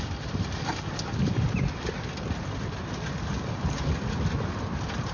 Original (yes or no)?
yes